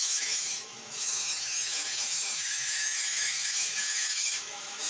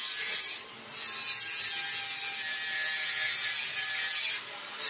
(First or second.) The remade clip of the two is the first